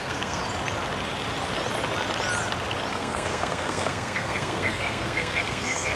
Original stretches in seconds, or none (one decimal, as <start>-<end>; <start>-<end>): 0.4-2.9